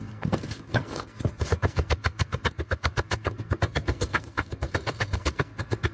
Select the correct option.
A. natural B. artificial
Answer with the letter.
B